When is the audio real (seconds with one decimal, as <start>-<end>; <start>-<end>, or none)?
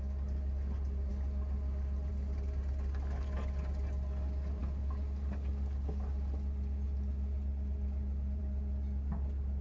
0.0-9.6